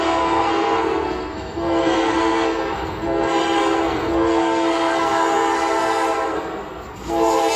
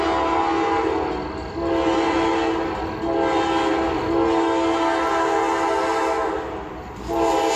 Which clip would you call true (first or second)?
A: second